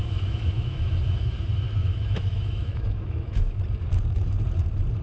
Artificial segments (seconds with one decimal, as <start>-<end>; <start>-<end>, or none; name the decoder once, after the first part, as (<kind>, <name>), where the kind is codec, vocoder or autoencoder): 0.0-1.2 (autoencoder, DAC-VAE); 1.8-3.6